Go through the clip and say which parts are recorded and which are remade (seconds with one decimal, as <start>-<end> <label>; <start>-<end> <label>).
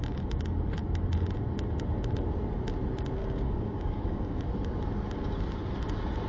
0.0-3.2 recorded; 3.2-4.5 remade; 4.5-6.3 recorded